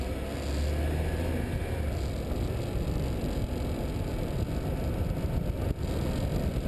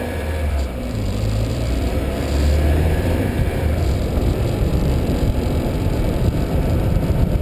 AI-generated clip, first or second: second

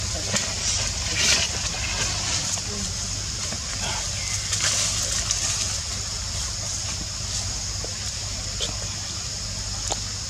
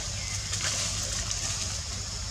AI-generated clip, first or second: second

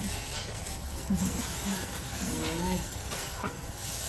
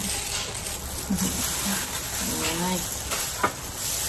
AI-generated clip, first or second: first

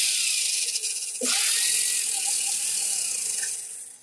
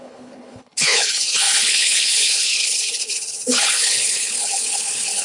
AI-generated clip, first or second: second